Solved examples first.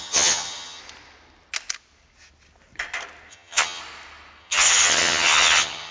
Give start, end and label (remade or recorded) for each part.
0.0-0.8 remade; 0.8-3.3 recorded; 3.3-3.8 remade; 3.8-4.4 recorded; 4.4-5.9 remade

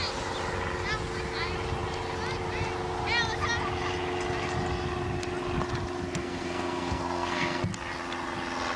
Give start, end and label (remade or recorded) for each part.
0.0-6.2 recorded; 6.2-7.6 remade; 7.6-8.8 recorded

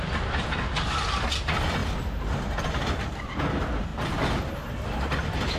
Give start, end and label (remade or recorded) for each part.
0.0-1.8 remade; 1.8-2.3 recorded; 2.3-3.9 remade; 3.9-5.6 recorded

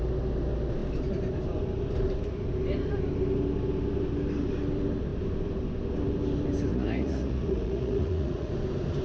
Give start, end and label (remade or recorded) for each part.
0.0-6.7 recorded; 6.7-8.5 remade; 8.5-9.0 recorded

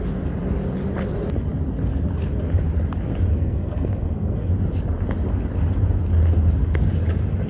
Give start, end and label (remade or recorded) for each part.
0.0-3.3 recorded; 3.3-4.5 remade; 4.5-7.5 recorded

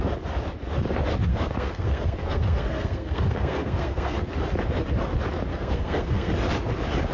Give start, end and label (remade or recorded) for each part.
0.0-1.3 recorded; 1.3-4.3 remade; 4.3-5.5 recorded; 5.5-6.3 remade; 6.3-7.1 recorded